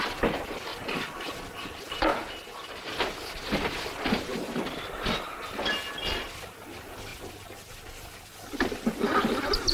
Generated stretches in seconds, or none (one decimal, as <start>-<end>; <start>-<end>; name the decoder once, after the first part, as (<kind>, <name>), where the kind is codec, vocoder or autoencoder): none